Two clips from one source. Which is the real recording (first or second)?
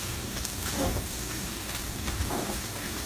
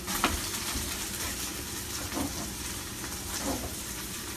second